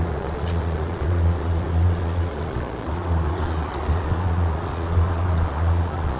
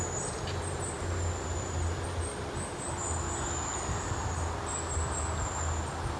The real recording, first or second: second